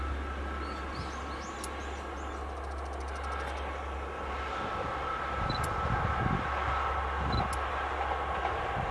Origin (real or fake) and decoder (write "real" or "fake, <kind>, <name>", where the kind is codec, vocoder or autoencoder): real